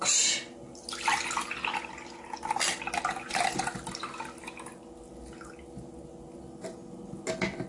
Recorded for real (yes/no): yes